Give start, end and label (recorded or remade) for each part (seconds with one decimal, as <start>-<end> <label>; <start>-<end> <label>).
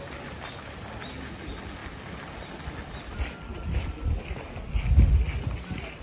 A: 0.0-1.8 recorded; 1.8-5.1 remade; 5.1-6.0 recorded